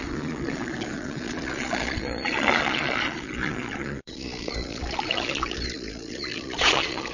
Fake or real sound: fake